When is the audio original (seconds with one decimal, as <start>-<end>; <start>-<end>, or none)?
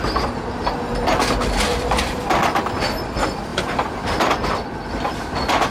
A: 0.0-1.7; 2.3-3.5; 4.3-5.7